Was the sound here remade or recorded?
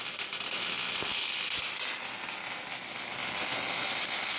recorded